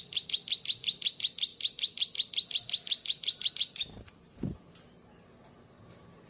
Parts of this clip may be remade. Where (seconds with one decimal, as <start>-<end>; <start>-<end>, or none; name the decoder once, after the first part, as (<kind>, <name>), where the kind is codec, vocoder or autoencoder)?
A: none